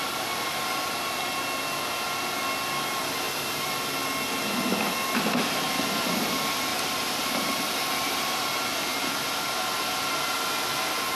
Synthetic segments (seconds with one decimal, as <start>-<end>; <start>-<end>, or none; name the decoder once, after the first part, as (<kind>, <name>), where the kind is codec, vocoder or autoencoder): 6.7-8.1 (vocoder, BigVGAN v2); 8.9-9.6